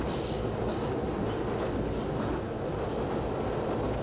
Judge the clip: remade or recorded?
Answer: recorded